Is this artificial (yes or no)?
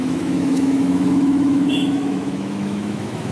yes